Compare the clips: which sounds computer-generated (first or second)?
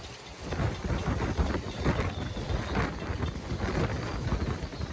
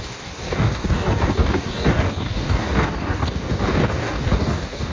second